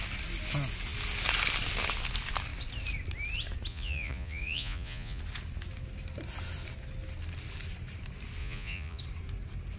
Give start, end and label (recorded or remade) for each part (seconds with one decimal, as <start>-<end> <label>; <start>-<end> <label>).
0.0-3.7 recorded; 3.7-5.2 remade; 5.2-8.4 recorded; 8.4-9.0 remade; 9.0-9.8 recorded